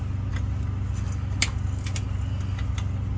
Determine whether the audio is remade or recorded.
recorded